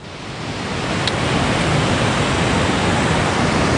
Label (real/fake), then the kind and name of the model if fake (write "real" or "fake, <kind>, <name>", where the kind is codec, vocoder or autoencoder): real